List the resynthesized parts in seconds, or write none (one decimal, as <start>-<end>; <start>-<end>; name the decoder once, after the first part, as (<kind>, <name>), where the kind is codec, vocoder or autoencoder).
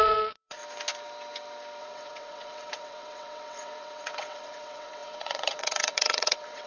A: 0.0-0.6 (vocoder, WaveNeXt); 1.8-6.7